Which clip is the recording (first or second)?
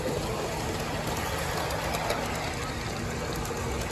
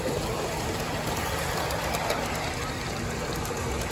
first